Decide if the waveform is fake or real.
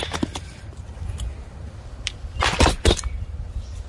real